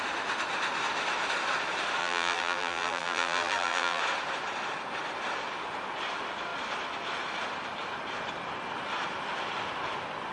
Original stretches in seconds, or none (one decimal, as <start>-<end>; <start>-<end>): 0.0-2.0; 4.0-10.3